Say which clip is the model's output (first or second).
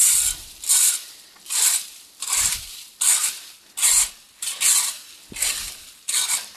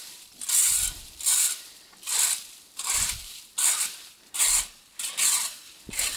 second